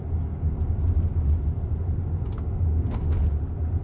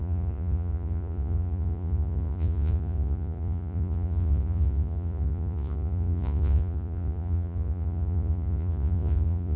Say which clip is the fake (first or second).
second